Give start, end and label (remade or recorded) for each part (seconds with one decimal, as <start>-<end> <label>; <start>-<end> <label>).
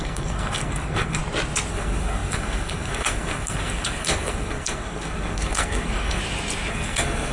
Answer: 0.0-1.2 remade; 1.2-1.7 recorded; 1.7-6.2 remade; 6.2-6.7 recorded; 6.7-7.3 remade